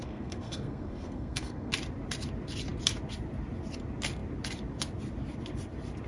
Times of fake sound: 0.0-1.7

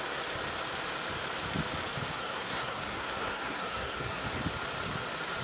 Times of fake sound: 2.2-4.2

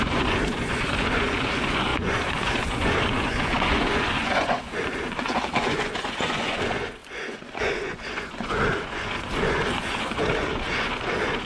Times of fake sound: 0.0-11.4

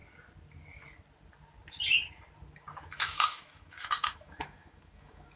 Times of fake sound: 2.8-5.4